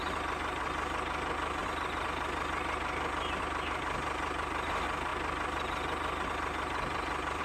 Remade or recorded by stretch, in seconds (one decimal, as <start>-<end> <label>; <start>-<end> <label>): 0.0-7.4 recorded